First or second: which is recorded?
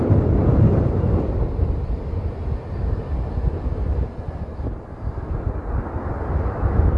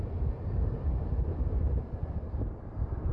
first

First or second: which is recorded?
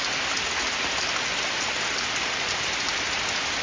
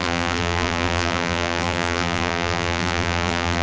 first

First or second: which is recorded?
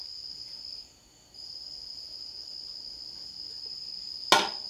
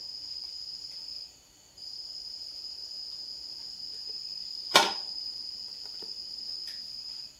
first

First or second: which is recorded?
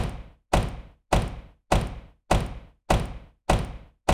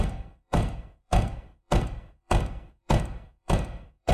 first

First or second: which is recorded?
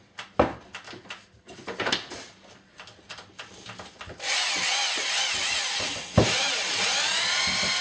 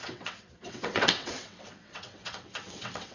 first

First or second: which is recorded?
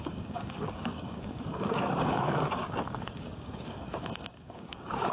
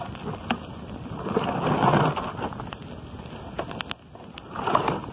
second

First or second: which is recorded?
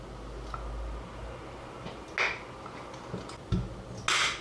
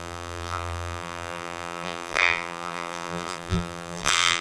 first